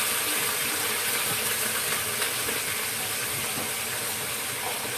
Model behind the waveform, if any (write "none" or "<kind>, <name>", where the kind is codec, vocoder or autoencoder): none